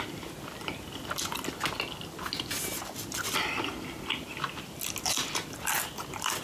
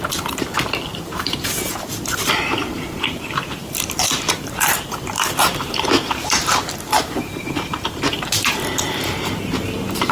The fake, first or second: second